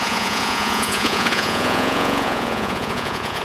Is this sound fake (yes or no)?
yes